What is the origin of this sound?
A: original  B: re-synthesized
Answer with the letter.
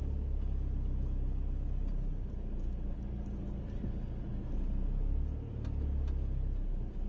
A